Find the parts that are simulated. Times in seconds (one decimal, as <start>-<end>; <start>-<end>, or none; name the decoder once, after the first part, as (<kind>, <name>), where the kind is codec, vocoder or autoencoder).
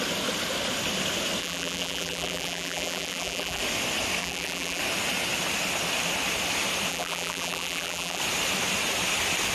1.4-3.6 (vocoder, BigVGAN v2); 4.2-4.8; 6.9-8.2